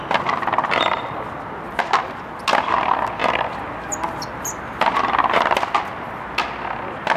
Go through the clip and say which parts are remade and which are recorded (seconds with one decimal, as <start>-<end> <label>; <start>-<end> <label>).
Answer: 0.0-7.2 recorded